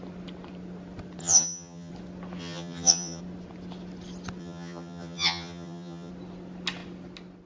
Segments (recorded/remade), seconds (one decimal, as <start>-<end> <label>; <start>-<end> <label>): 0.0-1.2 recorded; 1.2-1.9 remade; 1.9-2.4 recorded; 2.4-3.2 remade; 3.2-4.4 recorded; 4.4-6.1 remade; 6.1-7.5 recorded